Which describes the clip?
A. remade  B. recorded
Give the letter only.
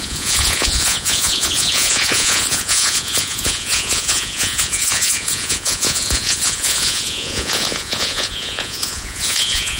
A